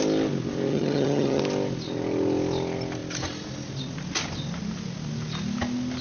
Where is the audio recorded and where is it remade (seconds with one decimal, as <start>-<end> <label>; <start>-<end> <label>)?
0.0-0.7 recorded; 0.7-1.4 remade; 1.4-6.0 recorded